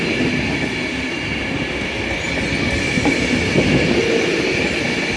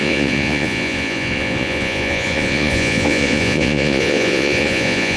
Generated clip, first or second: second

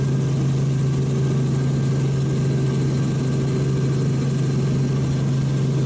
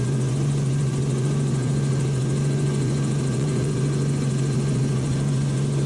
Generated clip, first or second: second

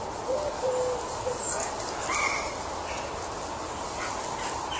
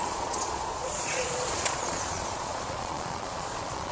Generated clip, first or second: second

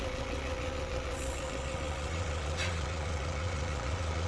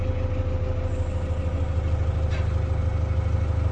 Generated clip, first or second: first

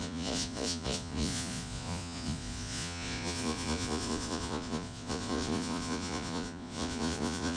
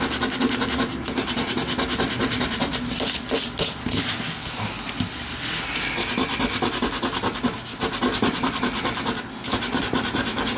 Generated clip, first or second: first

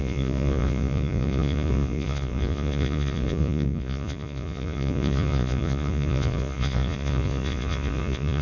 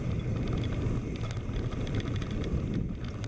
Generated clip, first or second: first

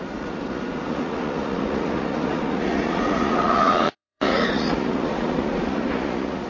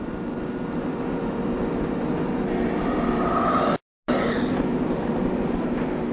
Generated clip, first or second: first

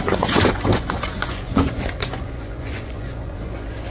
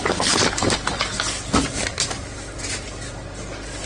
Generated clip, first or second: first